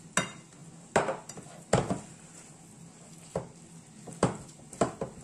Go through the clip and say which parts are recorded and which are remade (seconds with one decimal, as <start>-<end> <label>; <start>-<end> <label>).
0.0-5.2 recorded